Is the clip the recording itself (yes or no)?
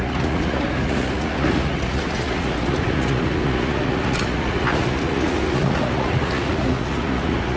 no